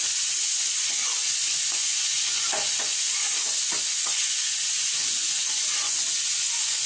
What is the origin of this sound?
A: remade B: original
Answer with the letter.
A